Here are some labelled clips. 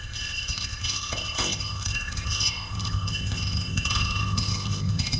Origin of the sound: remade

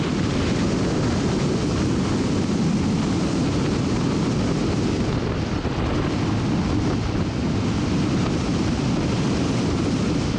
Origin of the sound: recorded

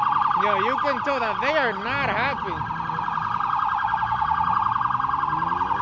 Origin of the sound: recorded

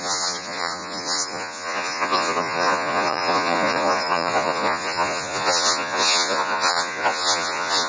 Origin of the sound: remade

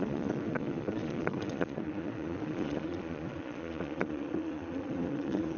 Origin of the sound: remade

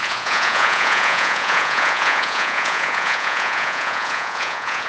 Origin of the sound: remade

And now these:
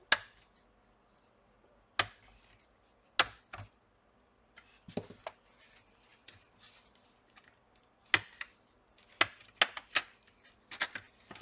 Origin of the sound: recorded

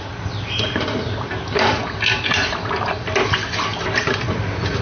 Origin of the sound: recorded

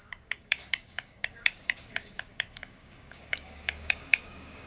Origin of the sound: remade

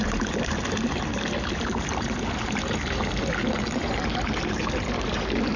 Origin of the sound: remade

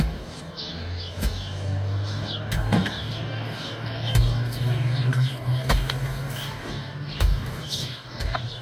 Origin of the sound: remade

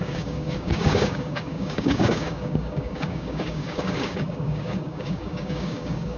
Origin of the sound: remade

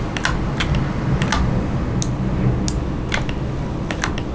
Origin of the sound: recorded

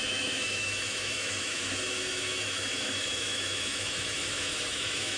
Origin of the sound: remade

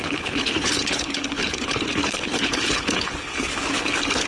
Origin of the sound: remade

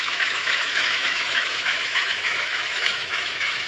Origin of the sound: remade